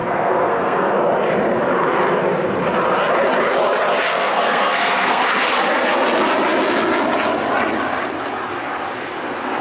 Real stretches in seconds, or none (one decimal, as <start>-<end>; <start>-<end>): 0.9-4.1; 5.2-9.6